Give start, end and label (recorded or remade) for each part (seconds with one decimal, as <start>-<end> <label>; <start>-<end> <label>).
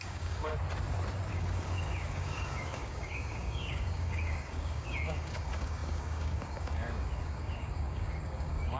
0.0-0.5 remade; 0.5-1.3 recorded; 1.3-8.8 remade